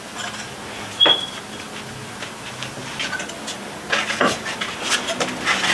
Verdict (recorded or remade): recorded